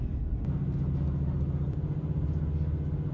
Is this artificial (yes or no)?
no